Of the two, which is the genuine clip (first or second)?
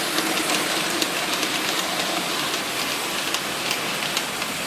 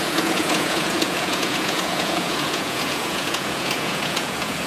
first